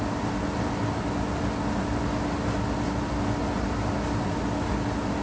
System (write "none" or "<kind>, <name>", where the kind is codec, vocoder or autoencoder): none